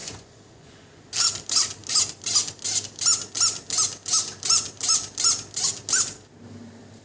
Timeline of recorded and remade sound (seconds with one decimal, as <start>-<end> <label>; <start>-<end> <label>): 0.0-1.0 remade; 1.0-7.0 recorded